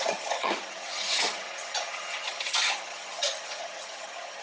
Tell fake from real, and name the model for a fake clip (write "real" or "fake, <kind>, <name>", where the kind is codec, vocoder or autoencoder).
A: fake, vocoder, HiFi-GAN